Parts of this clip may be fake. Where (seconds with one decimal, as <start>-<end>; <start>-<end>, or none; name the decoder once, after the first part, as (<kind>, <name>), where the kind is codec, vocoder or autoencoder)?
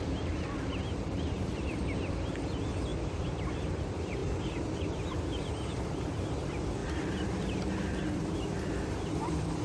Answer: 0.0-9.6 (vocoder, BigVGAN v2)